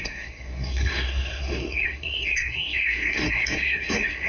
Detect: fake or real fake